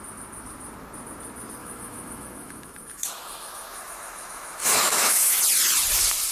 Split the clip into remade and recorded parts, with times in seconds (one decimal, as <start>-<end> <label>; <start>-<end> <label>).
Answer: 0.0-1.6 recorded; 1.6-5.4 remade; 5.4-6.3 recorded